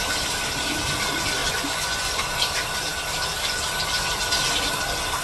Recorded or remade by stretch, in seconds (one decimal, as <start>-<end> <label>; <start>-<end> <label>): 0.0-1.4 recorded; 1.4-2.1 remade; 2.1-5.2 recorded